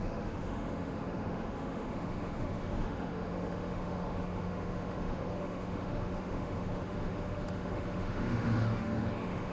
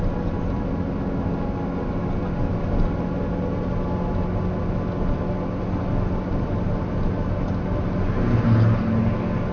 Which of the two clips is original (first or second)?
second